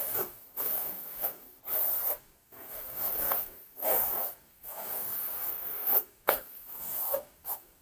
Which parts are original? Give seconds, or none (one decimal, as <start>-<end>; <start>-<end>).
1.6-2.2